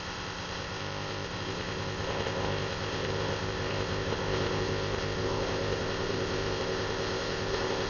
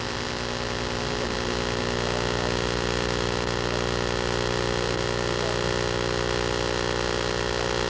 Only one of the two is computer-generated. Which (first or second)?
first